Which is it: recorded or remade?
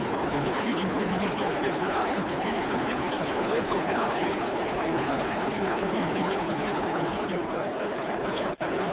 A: remade